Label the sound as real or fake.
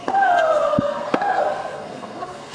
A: fake